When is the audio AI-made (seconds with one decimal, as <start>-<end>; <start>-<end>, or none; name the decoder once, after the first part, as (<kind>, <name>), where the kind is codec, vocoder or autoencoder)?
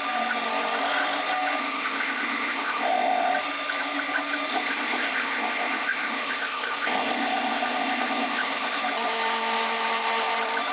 1.6-3.3 (codec, ZipCodec); 4.5-8.8